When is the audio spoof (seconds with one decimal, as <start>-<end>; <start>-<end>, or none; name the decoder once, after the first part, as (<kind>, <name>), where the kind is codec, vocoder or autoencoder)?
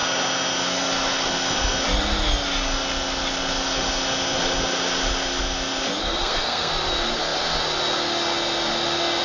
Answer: 6.0-6.7 (codec, SNAC)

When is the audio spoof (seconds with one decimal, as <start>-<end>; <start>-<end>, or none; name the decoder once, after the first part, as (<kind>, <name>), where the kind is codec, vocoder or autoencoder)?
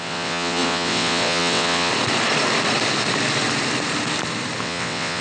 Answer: 0.0-1.9 (vocoder, WaveNeXt); 4.6-5.2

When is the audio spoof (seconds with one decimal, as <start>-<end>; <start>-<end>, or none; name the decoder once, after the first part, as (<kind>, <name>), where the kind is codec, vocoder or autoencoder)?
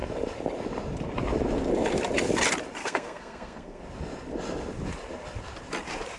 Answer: 2.8-3.8 (codec, SNAC)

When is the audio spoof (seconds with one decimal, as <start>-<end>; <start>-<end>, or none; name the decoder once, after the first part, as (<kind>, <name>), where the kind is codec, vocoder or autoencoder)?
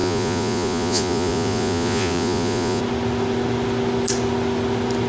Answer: 0.0-2.8 (vocoder, Vocos)